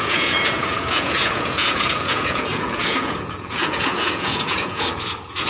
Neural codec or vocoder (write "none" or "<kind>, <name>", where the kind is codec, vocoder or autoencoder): vocoder, Vocos